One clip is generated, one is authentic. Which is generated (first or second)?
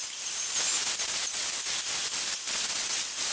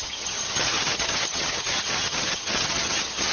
second